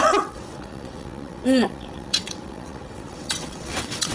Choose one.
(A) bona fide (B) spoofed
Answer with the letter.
B